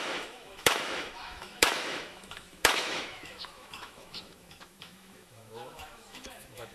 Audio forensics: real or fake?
fake